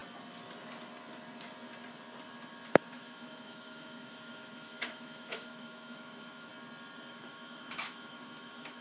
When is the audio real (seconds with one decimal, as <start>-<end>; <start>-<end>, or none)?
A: 0.0-2.7; 6.5-7.1